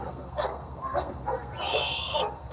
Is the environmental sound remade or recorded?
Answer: remade